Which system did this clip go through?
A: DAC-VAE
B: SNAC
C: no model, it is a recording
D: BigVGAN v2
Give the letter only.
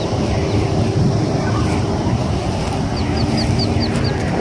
C